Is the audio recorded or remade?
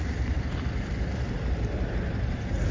recorded